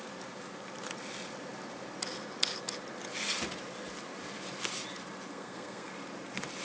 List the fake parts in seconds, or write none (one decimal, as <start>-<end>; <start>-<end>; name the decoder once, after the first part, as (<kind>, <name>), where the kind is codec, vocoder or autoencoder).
5.3-5.9 (codec, SNAC)